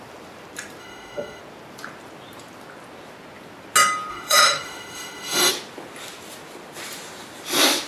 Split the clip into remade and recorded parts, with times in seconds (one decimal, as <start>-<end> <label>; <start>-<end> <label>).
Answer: 0.0-0.8 recorded; 0.8-1.4 remade; 1.4-4.1 recorded; 4.1-5.5 remade; 5.5-7.9 recorded